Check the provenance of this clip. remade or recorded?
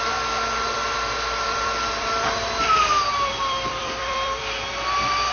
remade